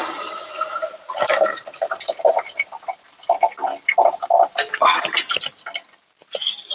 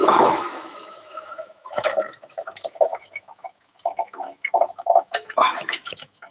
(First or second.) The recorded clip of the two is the first